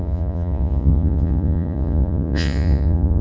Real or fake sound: fake